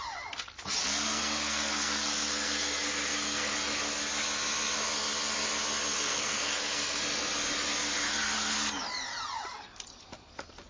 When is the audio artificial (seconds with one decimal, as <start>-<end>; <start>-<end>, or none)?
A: 0.8-3.5; 5.9-7.0